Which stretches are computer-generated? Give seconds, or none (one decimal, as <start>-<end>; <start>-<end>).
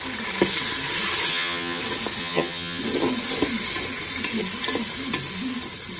1.3-1.8; 2.2-2.8